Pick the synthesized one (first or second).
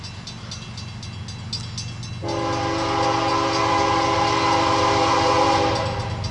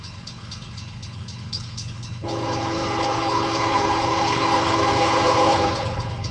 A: second